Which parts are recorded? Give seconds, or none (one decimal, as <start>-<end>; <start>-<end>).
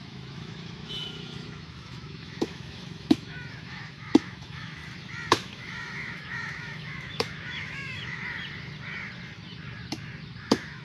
4.8-5.3; 8.2-10.4